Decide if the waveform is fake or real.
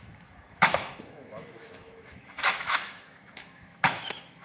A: fake